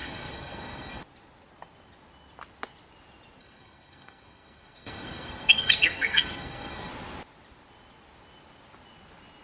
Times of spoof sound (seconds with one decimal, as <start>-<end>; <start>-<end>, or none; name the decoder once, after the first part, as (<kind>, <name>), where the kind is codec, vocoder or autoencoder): 0.0-1.0 (codec, SNAC); 3.4-6.9